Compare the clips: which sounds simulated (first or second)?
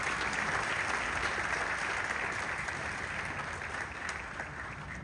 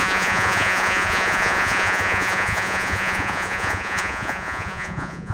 second